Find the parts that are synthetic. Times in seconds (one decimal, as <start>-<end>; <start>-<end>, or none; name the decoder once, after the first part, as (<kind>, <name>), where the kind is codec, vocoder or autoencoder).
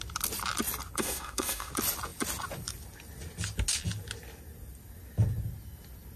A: 1.0-1.7 (autoencoder, DAC-VAE)